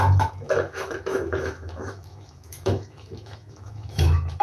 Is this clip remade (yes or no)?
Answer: yes